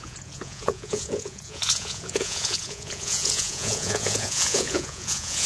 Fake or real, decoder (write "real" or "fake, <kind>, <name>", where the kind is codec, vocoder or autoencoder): fake, vocoder, Vocos